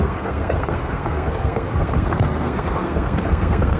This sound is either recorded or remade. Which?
remade